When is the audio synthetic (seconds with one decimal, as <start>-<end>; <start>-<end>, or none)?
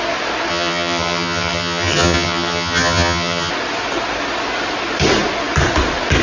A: 0.5-3.5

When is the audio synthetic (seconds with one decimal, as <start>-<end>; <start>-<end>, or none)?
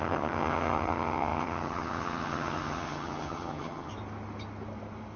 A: 0.0-3.9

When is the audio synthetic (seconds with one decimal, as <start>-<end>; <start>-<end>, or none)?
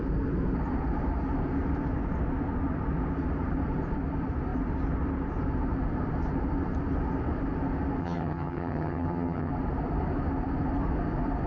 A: 8.0-9.5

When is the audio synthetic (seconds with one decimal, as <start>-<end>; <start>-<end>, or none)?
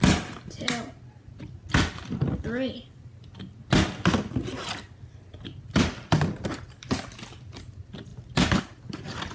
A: none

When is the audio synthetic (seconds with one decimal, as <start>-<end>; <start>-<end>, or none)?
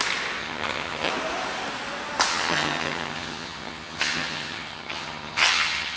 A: 0.4-1.1; 2.3-6.0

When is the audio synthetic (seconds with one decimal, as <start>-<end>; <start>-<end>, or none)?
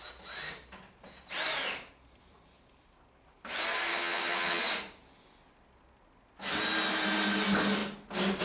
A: 3.9-4.6